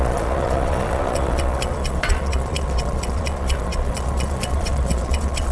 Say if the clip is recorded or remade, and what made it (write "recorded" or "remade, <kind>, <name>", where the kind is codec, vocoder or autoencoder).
remade, vocoder, Vocos